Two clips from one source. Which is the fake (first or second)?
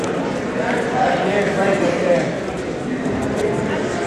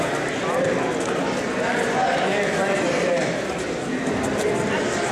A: first